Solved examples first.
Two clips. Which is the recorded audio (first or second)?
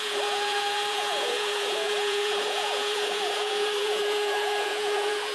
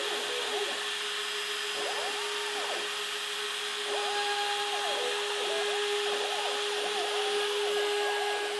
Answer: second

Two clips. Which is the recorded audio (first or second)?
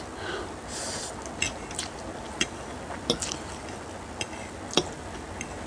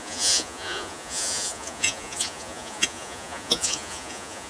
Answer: first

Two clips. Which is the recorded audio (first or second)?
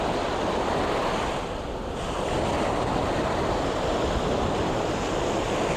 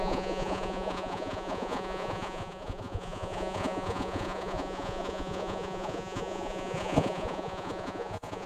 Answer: first